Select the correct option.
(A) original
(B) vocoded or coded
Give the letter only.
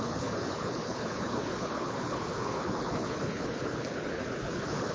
B